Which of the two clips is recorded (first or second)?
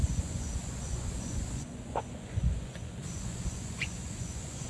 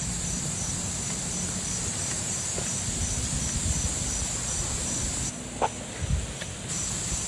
second